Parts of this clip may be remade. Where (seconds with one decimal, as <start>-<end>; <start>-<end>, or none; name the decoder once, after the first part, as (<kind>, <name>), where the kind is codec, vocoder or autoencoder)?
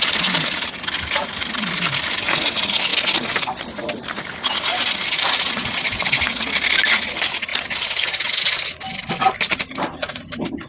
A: 4.7-6.0 (vocoder, Vocos)